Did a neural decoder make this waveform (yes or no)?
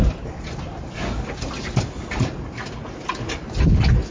no